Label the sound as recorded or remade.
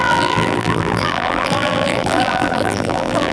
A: remade